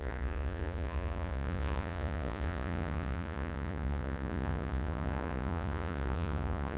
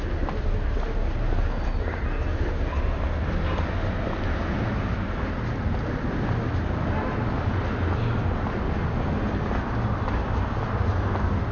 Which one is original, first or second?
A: second